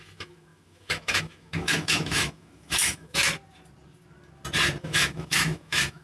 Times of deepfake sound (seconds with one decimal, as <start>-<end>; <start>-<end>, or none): 0.0-3.2; 4.8-6.0